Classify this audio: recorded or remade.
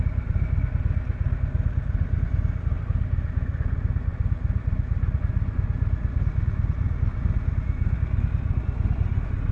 recorded